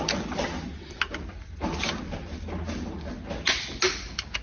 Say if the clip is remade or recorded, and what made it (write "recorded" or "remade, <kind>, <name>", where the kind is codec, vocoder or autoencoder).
recorded